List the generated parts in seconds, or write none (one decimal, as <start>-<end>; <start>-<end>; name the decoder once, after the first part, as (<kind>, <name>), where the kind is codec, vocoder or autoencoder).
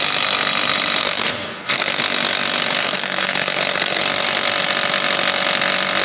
1.0-2.0 (codec, SNAC); 2.8-4.0